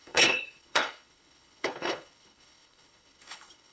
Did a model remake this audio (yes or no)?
yes